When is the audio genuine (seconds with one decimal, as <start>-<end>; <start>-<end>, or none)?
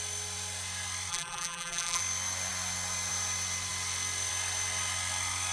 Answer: 0.0-1.1; 2.0-5.5